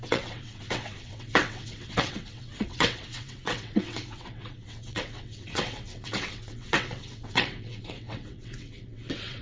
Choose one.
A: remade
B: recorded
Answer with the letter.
A